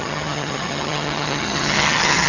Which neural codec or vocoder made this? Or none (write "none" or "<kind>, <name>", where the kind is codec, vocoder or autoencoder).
vocoder, HiFi-GAN